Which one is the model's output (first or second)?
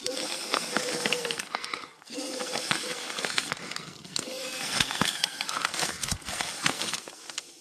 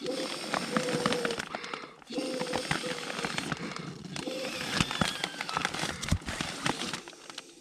first